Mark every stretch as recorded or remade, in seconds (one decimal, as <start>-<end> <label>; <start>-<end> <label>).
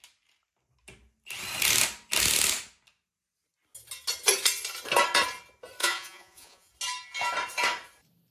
0.0-5.8 recorded; 5.8-6.7 remade; 6.7-8.3 recorded